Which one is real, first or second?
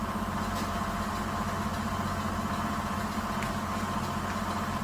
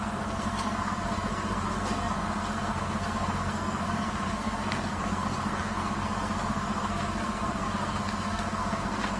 first